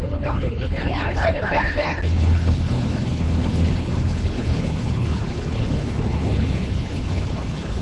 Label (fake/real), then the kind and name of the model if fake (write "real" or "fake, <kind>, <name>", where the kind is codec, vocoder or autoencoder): fake, codec, HILCodec